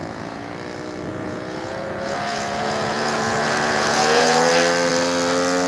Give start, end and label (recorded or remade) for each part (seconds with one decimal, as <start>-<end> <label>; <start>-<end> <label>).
0.0-0.5 remade; 0.5-1.1 recorded; 1.1-4.5 remade; 4.5-5.7 recorded